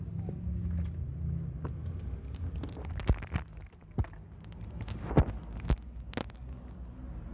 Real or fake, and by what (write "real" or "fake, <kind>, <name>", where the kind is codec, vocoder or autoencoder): real